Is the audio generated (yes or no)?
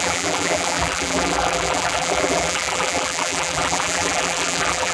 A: yes